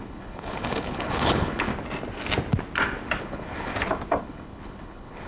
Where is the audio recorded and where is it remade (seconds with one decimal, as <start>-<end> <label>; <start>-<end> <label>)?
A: 0.0-1.7 remade; 1.7-3.2 recorded; 3.2-3.7 remade; 3.7-4.2 recorded; 4.2-5.3 remade